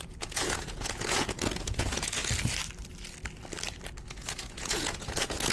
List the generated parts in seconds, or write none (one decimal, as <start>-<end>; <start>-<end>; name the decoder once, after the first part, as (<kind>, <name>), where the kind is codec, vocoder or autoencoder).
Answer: 0.0-2.2 (vocoder, Vocos); 4.1-5.5